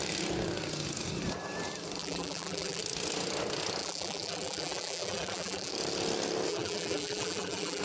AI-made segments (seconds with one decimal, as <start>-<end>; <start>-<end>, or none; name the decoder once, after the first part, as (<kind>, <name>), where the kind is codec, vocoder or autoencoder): 2.0-2.8 (vocoder, BigVGAN v2); 3.8-5.7; 6.5-7.8